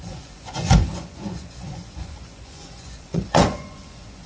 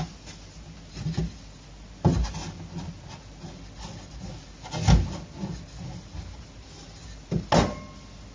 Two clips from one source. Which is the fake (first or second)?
first